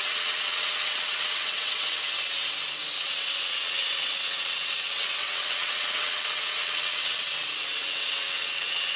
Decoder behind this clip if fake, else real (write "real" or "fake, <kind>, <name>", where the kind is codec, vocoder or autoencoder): fake, vocoder, WaveNeXt